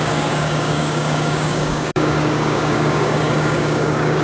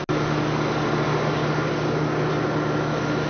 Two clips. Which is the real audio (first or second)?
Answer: second